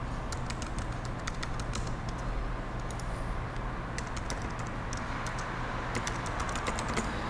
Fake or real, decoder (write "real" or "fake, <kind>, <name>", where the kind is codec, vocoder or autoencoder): real